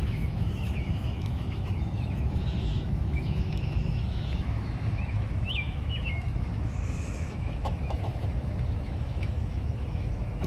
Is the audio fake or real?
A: fake